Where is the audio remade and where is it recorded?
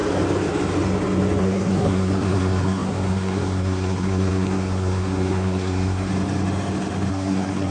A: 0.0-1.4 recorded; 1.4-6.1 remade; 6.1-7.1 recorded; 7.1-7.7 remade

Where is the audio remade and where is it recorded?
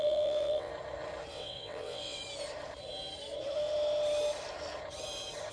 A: 0.0-0.7 remade; 0.7-1.3 recorded; 1.3-2.2 remade; 2.2-5.5 recorded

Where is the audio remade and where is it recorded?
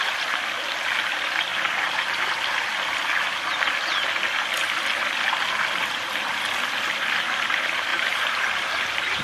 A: 0.0-7.9 recorded; 7.9-9.2 remade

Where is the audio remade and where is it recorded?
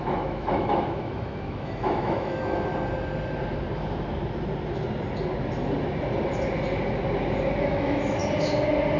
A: 0.0-2.7 remade; 2.7-7.6 recorded; 7.6-8.2 remade; 8.2-9.0 recorded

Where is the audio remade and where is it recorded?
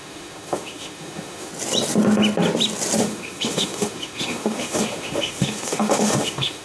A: 0.0-1.5 remade; 1.5-3.0 recorded; 3.0-6.6 remade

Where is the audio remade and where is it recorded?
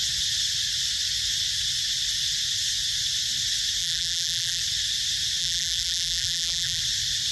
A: 0.0-3.8 recorded; 3.8-4.6 remade; 4.6-5.4 recorded; 5.4-6.8 remade; 6.8-7.3 recorded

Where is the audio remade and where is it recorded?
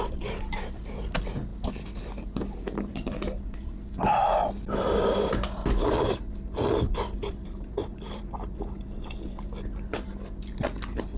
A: 0.0-7.2 recorded; 7.2-8.5 remade; 8.5-11.2 recorded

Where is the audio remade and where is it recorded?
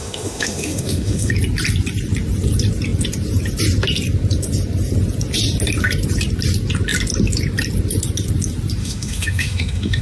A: 0.0-1.3 remade; 1.3-8.8 recorded; 8.8-10.0 remade